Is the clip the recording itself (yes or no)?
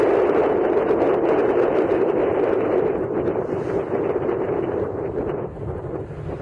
yes